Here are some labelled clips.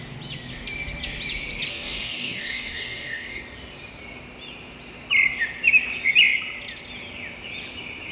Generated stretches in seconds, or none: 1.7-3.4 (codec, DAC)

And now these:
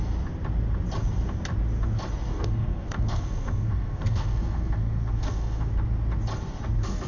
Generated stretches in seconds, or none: 2.3-5.7 (codec, SNAC)

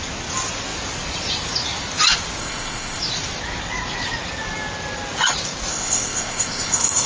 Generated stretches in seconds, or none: 2.4-3.0 (codec, ZipCodec); 5.7-7.1